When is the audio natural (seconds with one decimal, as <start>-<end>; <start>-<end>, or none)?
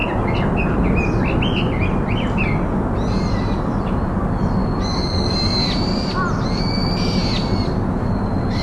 0.0-8.6